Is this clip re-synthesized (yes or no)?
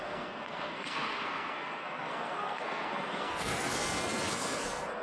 yes